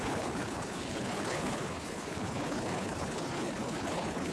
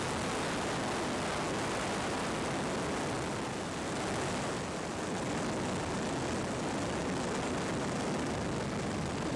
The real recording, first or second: second